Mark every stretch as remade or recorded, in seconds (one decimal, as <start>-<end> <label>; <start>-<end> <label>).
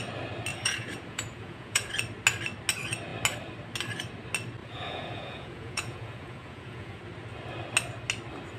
0.0-0.5 recorded; 0.5-1.9 remade; 1.9-4.6 recorded; 4.6-7.0 remade; 7.0-8.6 recorded